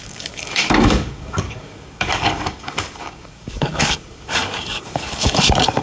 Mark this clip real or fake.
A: fake